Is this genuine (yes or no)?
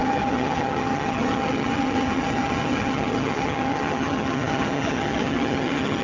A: no